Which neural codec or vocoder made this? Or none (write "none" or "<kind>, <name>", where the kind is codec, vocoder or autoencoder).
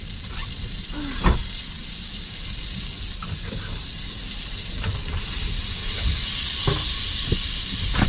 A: none